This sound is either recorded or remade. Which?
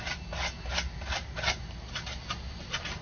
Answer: recorded